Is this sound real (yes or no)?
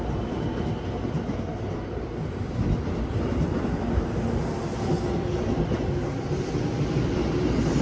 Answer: yes